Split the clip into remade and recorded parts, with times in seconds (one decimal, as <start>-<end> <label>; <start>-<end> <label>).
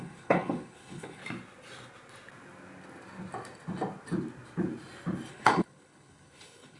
0.0-1.2 remade; 1.2-5.3 recorded; 5.3-6.8 remade